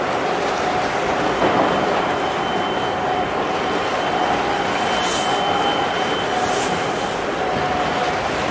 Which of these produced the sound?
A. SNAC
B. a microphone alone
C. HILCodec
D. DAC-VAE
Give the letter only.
B